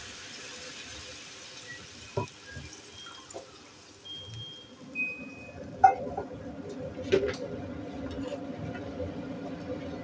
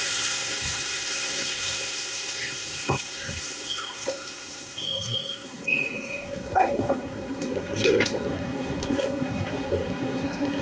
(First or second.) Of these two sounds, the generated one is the second